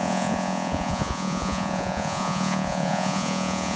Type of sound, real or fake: fake